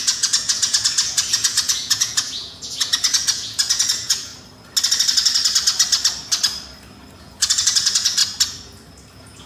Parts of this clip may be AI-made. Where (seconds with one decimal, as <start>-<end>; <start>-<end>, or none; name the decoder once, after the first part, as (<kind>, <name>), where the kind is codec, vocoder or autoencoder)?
0.0-4.3 (vocoder, Vocos); 7.2-8.2; 9.1-9.5